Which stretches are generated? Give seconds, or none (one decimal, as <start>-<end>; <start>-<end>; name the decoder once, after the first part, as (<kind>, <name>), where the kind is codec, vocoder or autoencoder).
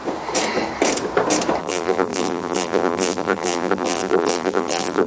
1.6-5.1 (vocoder, BigVGAN v2)